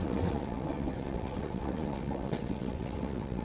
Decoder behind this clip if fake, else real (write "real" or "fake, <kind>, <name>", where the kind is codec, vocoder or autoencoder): fake, vocoder, WaveNeXt